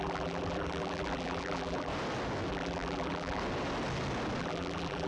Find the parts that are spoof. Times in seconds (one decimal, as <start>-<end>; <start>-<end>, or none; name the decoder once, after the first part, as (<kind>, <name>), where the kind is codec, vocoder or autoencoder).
0.0-1.9 (vocoder, BigVGAN v2); 2.5-3.4; 4.4-5.1